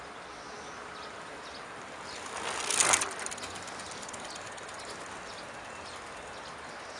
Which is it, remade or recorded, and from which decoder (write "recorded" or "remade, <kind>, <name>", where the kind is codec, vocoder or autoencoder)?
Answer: recorded